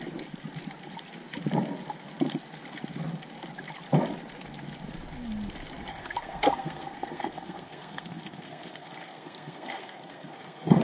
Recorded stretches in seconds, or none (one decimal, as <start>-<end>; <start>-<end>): 0.0-5.9

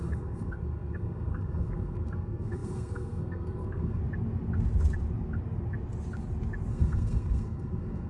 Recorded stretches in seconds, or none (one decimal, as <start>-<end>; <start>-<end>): 4.0-6.7

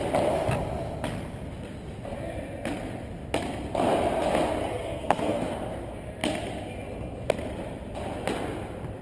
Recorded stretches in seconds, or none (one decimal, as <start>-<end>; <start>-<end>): 0.0-4.7; 5.5-9.0

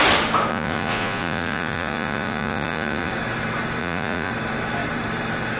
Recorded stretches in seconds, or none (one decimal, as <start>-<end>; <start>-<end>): 0.0-0.5; 3.1-3.8; 4.3-5.6

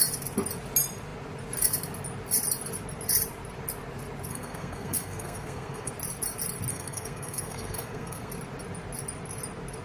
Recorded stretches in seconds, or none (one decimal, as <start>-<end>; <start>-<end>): 0.0-4.3; 5.9-6.7; 8.3-9.8

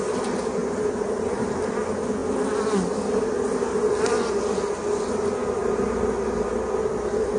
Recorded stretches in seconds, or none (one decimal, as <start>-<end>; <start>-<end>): 0.0-0.6; 1.5-5.6; 6.5-7.4